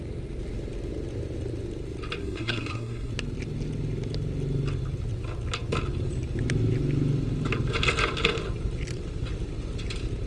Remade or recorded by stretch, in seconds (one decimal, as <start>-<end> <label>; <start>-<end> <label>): 0.0-2.2 recorded; 2.2-3.1 remade; 3.1-10.3 recorded